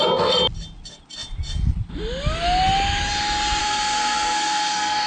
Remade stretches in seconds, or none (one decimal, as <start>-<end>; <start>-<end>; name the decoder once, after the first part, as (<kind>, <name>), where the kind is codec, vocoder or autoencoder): 3.6-5.1 (codec, SNAC)